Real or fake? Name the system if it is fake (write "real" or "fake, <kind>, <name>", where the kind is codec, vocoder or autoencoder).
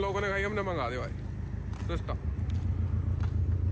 real